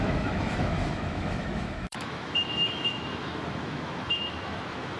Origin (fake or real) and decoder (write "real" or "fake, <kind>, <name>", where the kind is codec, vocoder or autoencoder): fake, autoencoder, DAC-VAE